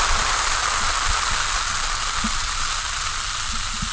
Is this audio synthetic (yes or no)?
no